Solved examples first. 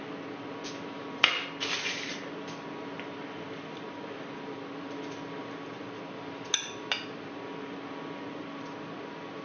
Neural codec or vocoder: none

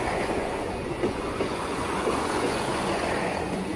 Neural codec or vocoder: vocoder, Vocos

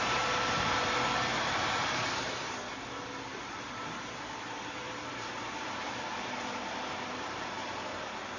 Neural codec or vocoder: vocoder, BigVGAN v2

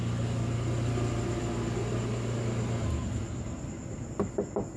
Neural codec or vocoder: none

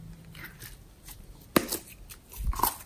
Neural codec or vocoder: none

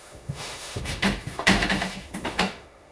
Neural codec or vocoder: autoencoder, DAC-VAE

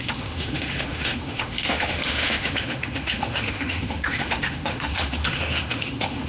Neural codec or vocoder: autoencoder, DAC-VAE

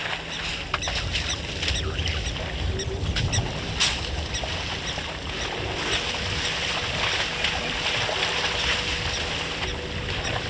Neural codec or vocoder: none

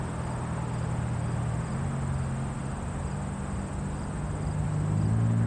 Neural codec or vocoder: none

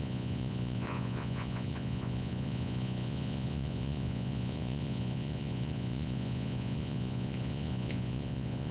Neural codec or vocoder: vocoder, Vocos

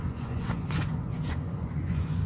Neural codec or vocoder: vocoder, Vocos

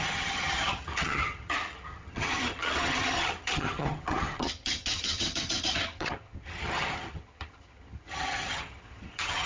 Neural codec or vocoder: vocoder, HiFi-GAN